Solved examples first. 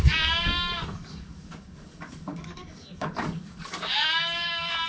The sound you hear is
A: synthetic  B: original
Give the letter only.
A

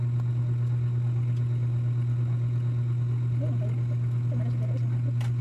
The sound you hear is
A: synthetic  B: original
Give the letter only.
B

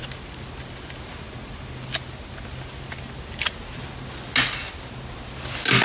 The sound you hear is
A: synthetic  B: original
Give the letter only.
B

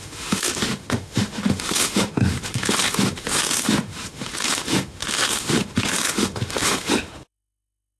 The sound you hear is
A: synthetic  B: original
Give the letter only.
A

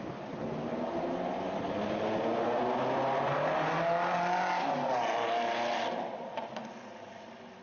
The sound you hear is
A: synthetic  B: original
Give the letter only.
B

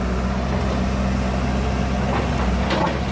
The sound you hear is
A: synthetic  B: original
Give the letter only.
B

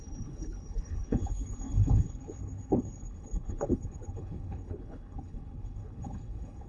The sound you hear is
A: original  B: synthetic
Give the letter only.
B